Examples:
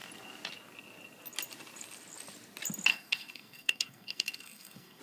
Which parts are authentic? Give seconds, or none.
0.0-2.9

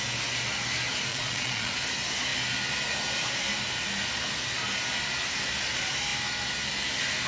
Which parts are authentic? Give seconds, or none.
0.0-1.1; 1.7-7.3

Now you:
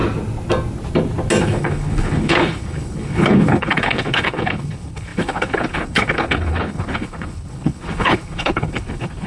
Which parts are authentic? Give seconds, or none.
0.0-1.4

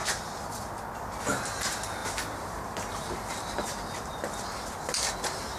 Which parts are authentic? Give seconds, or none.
0.6-2.0

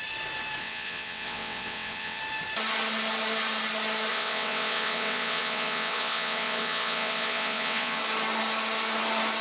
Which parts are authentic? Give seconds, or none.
0.0-0.6; 2.2-4.1; 8.0-9.4

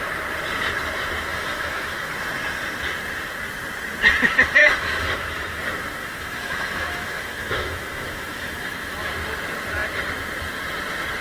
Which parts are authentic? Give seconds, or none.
0.0-1.3; 2.1-4.6; 5.6-6.0; 9.1-11.2

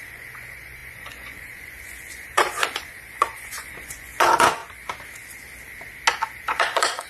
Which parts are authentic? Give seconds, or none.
4.6-6.5